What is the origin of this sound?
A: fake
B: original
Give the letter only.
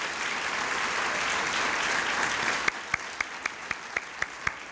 B